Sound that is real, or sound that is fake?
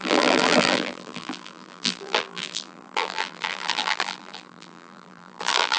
fake